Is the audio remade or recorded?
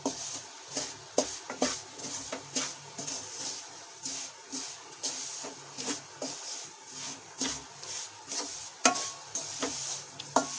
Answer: recorded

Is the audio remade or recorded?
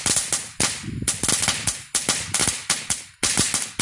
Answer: recorded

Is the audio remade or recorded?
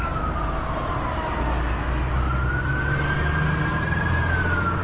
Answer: recorded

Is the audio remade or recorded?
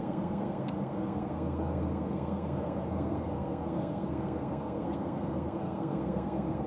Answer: remade